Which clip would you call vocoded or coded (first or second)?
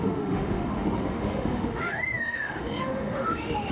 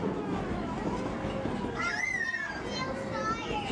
first